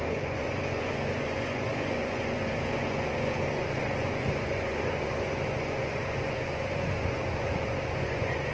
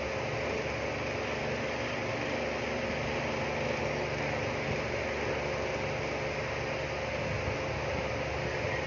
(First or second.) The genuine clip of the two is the second